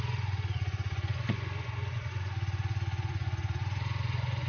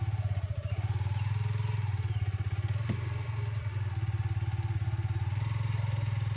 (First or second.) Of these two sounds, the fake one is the first